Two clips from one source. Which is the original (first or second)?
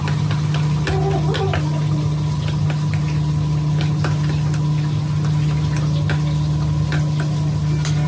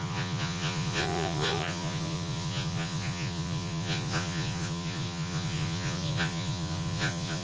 first